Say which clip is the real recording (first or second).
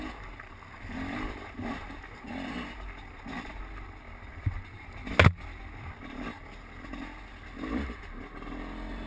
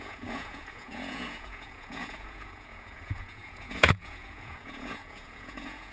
first